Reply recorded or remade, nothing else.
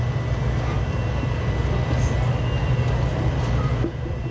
recorded